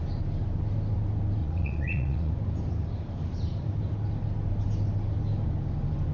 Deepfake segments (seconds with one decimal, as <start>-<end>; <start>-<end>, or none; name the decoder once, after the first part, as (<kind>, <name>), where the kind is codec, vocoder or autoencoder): 1.4-2.3 (vocoder, Vocos)